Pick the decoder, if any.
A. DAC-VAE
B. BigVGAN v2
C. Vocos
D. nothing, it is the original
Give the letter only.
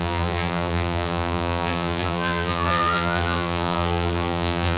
B